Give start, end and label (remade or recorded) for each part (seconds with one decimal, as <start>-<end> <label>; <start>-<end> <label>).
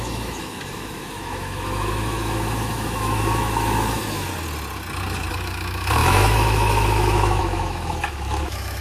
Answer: 0.0-4.3 remade; 4.3-5.3 recorded; 5.3-8.8 remade